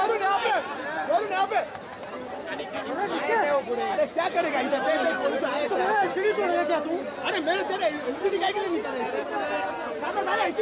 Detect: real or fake real